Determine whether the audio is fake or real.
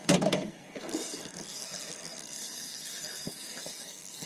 fake